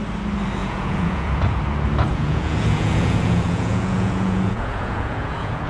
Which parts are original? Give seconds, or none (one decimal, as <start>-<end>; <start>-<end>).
0.0-0.6; 1.6-2.1